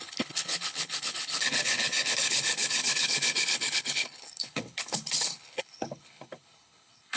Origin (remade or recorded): remade